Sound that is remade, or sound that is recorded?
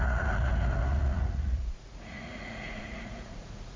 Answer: remade